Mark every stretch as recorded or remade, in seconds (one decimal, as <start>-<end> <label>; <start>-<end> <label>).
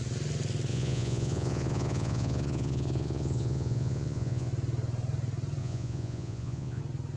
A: 0.0-0.7 recorded; 0.7-4.5 remade; 4.5-5.6 recorded; 5.6-6.8 remade; 6.8-7.2 recorded